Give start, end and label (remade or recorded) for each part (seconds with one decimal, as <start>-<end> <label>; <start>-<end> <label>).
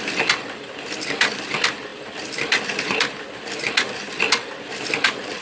0.0-5.4 recorded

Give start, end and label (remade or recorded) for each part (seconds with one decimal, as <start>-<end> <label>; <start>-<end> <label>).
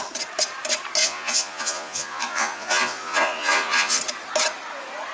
0.0-1.0 recorded; 1.0-4.0 remade; 4.0-5.1 recorded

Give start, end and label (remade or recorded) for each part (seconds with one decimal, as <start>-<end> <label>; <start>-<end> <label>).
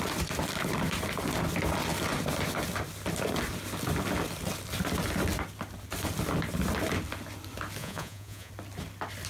0.0-7.8 recorded; 7.8-8.5 remade; 8.5-9.3 recorded